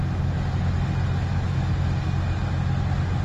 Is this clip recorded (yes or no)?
yes